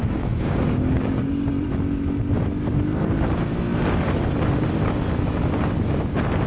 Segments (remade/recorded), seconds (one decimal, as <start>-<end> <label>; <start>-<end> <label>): 0.0-1.3 remade; 1.3-6.5 recorded